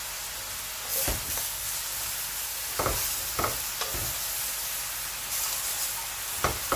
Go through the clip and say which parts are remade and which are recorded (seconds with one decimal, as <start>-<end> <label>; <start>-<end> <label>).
0.0-6.8 recorded